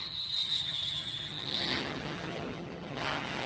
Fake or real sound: fake